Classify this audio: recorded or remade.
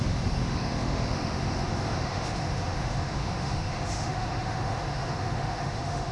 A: remade